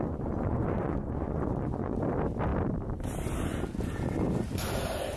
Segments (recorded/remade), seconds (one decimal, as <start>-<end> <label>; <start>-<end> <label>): 0.0-2.0 remade; 2.0-5.2 recorded